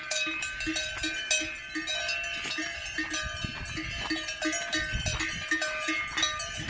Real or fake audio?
real